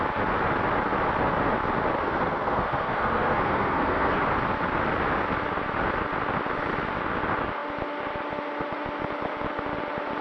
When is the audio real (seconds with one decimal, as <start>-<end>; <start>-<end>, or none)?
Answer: 0.0-2.0; 4.2-10.2